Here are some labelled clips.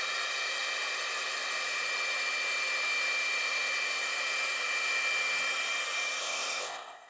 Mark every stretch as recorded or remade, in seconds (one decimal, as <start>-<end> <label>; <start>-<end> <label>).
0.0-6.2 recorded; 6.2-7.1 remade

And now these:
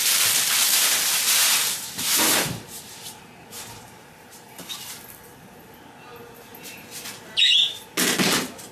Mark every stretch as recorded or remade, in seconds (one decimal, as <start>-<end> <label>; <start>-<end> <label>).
0.0-1.6 recorded; 1.6-4.9 remade; 4.9-8.7 recorded

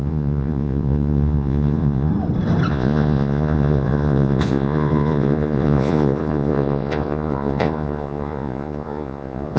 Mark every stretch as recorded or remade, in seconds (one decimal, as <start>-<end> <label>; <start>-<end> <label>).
0.0-2.1 remade; 2.1-2.7 recorded; 2.7-9.6 remade

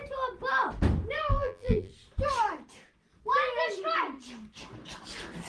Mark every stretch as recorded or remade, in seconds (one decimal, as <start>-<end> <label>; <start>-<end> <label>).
0.0-1.3 recorded; 1.3-1.9 remade; 1.9-5.5 recorded

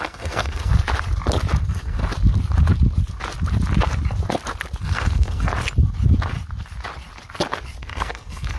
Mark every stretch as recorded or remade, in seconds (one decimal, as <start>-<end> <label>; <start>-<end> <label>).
0.0-0.7 remade; 0.7-1.6 recorded; 1.6-2.0 remade; 2.0-4.8 recorded; 4.8-5.5 remade; 5.5-7.8 recorded; 7.8-8.6 remade